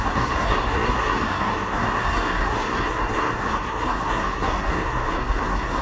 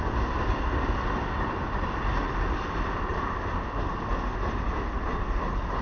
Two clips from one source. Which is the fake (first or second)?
first